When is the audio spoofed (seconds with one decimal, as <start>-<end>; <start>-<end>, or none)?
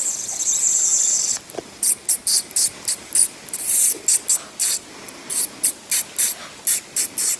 none